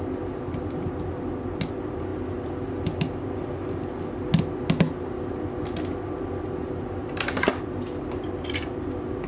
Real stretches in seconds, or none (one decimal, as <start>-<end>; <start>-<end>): 0.0-9.3